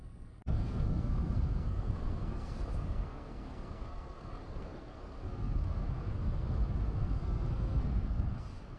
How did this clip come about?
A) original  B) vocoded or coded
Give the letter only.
B